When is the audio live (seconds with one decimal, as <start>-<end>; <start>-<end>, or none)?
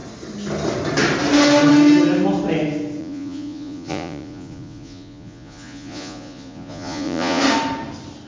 0.0-3.0; 7.4-8.3